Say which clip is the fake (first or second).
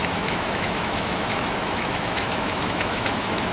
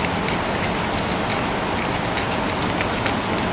first